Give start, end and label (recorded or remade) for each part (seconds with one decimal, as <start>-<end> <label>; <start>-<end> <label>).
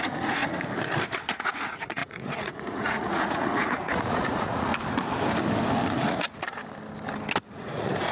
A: 0.0-0.4 remade; 0.4-1.3 recorded; 1.3-4.7 remade; 4.7-6.0 recorded; 6.0-6.6 remade; 6.6-7.5 recorded; 7.5-8.1 remade